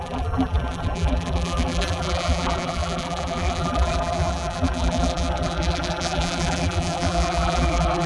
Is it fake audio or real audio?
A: fake